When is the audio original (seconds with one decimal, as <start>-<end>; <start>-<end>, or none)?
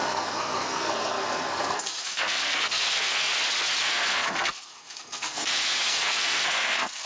3.3-3.8